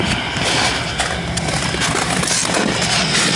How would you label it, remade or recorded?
recorded